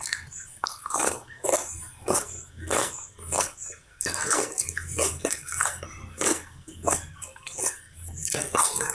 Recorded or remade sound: remade